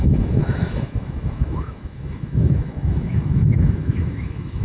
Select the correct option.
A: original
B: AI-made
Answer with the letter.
B